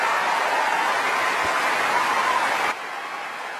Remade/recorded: recorded